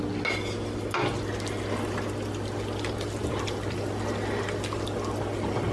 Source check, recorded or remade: recorded